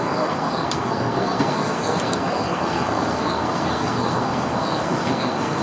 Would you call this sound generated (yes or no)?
yes